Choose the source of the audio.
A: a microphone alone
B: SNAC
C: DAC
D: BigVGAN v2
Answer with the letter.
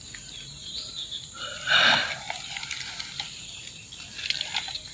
A